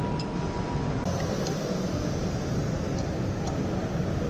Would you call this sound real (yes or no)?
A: yes